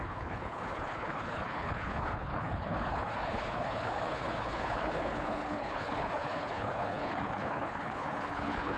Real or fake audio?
fake